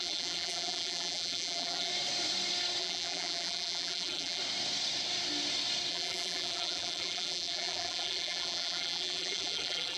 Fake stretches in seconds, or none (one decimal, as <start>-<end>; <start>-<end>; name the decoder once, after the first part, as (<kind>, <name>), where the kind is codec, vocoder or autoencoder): 0.0-1.9 (vocoder, BigVGAN v2); 2.8-4.4; 5.9-10.0